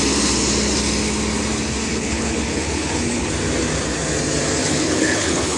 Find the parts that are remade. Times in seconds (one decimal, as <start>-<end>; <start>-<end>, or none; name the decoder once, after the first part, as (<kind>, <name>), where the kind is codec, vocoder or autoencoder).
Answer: 1.9-3.3 (codec, HILCodec); 4.6-5.6